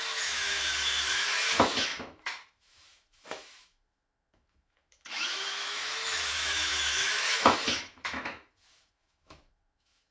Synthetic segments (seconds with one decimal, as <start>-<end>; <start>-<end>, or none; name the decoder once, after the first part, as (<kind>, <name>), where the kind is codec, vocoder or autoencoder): 0.0-10.1 (autoencoder, DAC-VAE)